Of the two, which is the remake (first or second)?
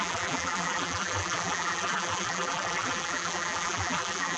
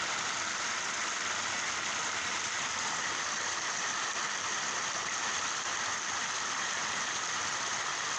first